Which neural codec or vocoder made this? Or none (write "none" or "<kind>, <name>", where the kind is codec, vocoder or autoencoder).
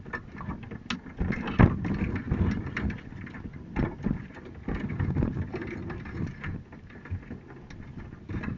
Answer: none